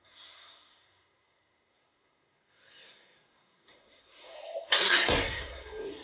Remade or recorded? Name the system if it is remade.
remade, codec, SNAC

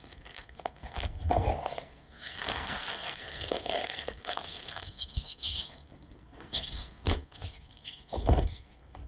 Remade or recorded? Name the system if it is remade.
remade, codec, SNAC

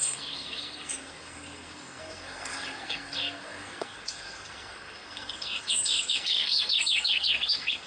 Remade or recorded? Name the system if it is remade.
remade, codec, SNAC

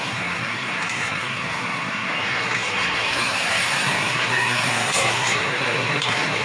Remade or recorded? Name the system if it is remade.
remade, codec, SNAC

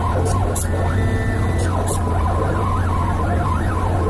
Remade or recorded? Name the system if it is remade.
recorded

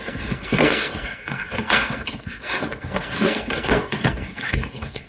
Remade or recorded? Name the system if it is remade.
remade, codec, SNAC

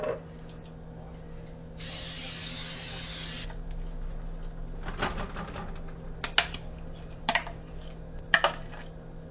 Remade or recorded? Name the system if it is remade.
recorded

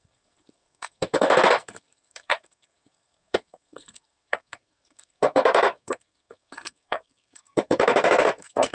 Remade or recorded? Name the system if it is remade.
remade, codec, SNAC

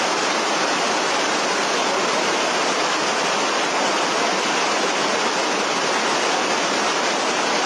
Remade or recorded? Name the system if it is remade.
recorded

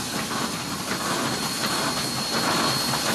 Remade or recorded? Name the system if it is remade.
recorded